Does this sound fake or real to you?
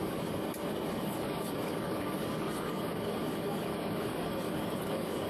fake